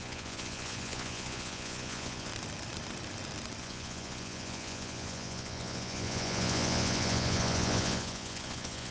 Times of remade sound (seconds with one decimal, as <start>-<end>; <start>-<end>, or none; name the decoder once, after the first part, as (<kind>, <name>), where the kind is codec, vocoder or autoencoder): 0.0-2.3 (vocoder, Vocos); 3.6-8.9

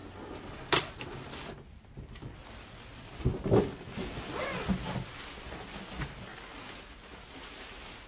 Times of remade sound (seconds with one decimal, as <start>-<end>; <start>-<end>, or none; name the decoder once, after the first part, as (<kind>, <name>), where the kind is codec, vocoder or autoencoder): 0.0-1.2 (vocoder, BigVGAN v2)

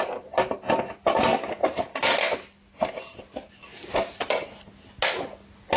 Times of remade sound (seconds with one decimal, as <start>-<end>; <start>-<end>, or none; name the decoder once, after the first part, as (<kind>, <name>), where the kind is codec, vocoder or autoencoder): none

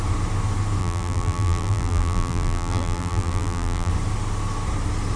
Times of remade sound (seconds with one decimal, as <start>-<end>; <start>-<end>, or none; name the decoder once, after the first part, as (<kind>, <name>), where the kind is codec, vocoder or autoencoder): 0.8-3.9 (vocoder, BigVGAN v2)

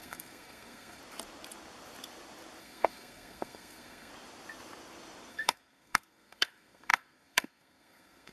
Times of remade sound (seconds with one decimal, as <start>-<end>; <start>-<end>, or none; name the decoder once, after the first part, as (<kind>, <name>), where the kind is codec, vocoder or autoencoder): 0.0-1.0 (codec, SNAC); 2.6-4.1; 5.3-8.3

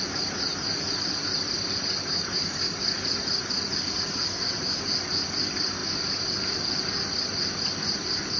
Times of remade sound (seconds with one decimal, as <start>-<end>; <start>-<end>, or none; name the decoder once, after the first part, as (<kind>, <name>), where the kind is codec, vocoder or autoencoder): none